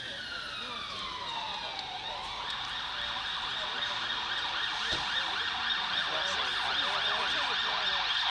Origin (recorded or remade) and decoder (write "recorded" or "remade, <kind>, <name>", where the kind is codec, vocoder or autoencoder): recorded